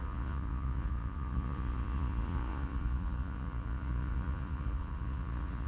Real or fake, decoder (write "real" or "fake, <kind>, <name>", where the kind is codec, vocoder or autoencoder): fake, vocoder, Vocos